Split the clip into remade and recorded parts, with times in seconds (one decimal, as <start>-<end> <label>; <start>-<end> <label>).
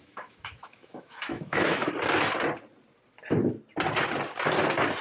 0.0-1.8 remade; 1.8-5.0 recorded